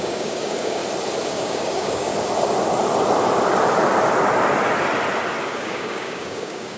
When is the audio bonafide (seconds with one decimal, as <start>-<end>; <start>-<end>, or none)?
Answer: 0.8-1.3; 2.1-5.4